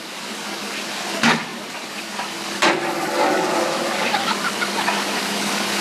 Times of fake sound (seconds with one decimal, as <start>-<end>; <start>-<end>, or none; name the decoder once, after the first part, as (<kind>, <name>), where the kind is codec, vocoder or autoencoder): 0.0-5.8 (codec, DAC)